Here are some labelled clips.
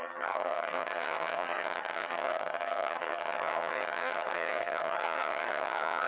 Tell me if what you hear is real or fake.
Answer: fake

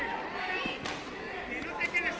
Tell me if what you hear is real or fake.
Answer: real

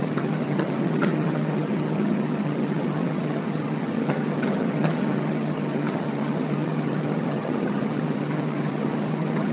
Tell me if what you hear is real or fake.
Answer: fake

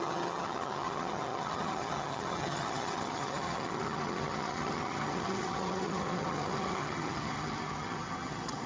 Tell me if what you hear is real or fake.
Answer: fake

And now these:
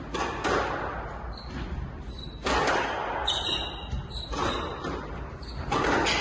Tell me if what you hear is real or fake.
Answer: real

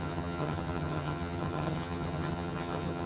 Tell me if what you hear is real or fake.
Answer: fake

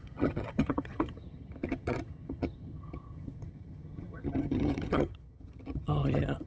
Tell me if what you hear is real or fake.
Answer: fake